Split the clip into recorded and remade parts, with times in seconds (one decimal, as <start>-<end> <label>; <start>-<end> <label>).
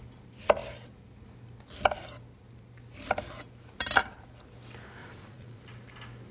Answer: 0.0-5.0 recorded; 5.0-5.6 remade; 5.6-6.3 recorded